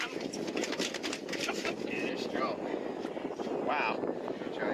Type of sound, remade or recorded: recorded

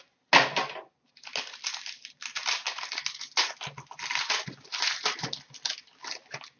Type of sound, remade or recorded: recorded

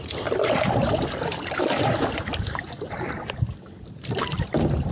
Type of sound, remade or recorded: recorded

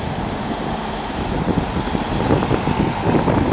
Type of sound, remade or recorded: recorded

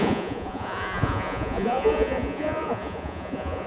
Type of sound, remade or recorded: remade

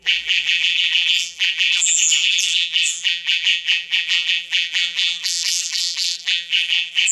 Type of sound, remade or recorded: remade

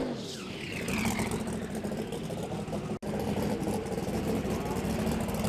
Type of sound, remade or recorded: recorded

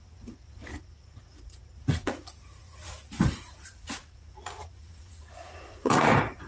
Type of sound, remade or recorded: remade